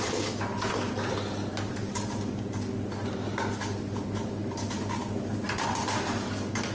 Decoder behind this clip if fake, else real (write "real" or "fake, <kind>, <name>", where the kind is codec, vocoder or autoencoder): real